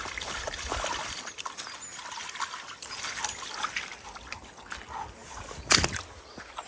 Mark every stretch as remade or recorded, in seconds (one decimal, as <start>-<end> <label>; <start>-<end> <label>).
0.0-6.7 recorded